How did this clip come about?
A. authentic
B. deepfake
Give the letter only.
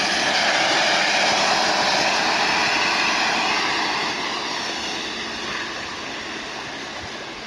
A